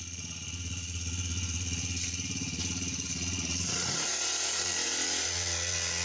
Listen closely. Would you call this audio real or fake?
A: fake